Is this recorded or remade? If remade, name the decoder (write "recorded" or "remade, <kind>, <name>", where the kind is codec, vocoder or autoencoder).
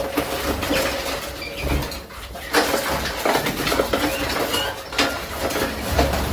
recorded